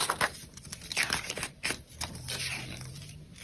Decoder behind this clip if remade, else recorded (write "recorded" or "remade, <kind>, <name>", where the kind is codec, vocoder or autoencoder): recorded